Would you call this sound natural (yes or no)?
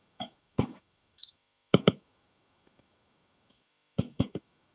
no